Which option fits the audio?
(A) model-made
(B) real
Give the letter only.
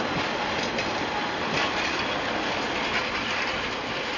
B